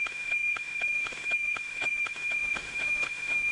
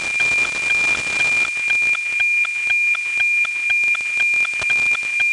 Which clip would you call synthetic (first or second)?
first